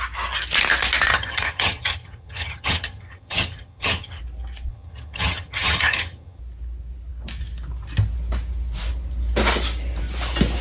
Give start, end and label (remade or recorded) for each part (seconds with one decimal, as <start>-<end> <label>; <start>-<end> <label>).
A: 0.0-1.1 recorded; 1.1-4.2 remade; 4.2-4.7 recorded; 4.7-6.4 remade; 6.4-10.6 recorded

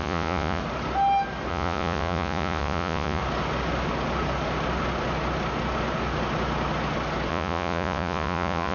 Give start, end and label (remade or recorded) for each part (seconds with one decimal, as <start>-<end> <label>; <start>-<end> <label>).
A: 0.0-0.6 remade; 0.6-1.5 recorded; 1.5-3.2 remade; 3.2-7.3 recorded; 7.3-8.7 remade

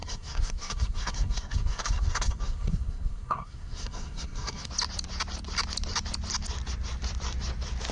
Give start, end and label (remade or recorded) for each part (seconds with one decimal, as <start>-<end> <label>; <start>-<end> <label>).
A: 0.0-4.7 remade; 4.7-7.9 recorded

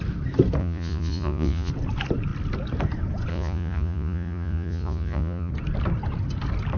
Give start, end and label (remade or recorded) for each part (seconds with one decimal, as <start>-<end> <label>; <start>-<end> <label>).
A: 0.0-0.6 recorded; 0.6-1.7 remade; 1.7-3.3 recorded; 3.3-5.5 remade; 5.5-6.8 recorded

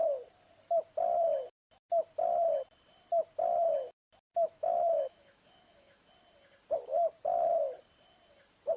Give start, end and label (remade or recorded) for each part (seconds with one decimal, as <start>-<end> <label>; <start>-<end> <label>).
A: 0.0-4.3 recorded; 4.3-6.1 remade; 6.1-8.8 recorded

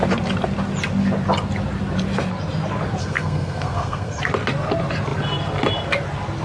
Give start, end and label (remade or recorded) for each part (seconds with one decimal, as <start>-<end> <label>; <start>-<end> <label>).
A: 0.0-3.0 recorded; 3.0-4.2 remade; 4.2-6.4 recorded

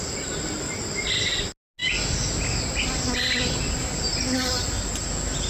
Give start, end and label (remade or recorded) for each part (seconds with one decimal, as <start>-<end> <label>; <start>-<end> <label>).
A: 0.0-5.5 recorded